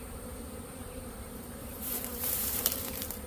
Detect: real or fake fake